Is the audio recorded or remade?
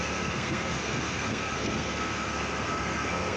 remade